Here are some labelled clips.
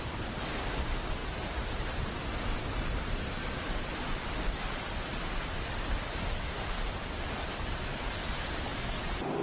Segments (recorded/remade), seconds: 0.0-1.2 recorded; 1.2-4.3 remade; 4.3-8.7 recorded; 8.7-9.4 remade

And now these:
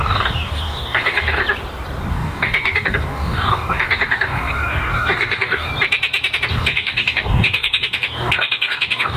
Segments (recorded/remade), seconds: 0.0-1.4 remade; 1.4-2.1 recorded; 2.1-5.7 remade; 5.7-6.5 recorded; 6.5-9.2 remade

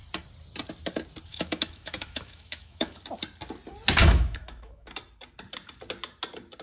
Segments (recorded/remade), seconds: 0.0-1.3 recorded; 1.3-3.0 remade; 3.0-4.0 recorded; 4.0-5.0 remade; 5.0-6.6 recorded

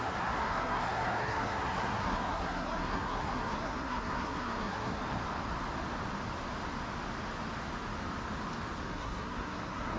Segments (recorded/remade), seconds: 0.0-5.0 remade; 5.0-8.9 recorded; 8.9-10.0 remade